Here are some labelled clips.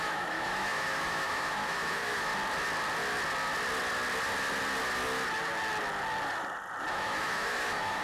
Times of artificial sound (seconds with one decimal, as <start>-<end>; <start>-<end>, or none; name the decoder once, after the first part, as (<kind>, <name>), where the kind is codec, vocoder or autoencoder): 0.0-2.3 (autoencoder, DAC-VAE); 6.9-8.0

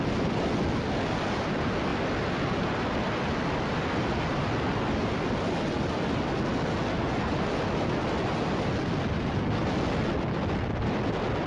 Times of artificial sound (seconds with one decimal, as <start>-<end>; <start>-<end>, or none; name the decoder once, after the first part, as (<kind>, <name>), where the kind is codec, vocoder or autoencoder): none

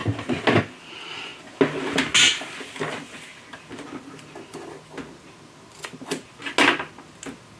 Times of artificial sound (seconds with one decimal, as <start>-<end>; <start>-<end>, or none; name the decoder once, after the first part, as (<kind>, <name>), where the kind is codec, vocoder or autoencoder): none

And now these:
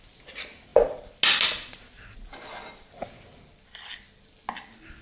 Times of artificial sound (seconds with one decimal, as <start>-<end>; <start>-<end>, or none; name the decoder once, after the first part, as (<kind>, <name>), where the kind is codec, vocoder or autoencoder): none

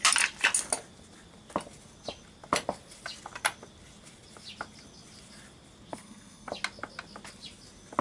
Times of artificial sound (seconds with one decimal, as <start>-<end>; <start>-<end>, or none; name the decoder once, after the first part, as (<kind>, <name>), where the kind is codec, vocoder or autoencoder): 5.9-6.5 (codec, SNAC)